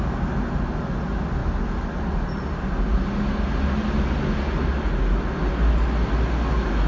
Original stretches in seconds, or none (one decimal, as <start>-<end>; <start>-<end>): 0.0-6.9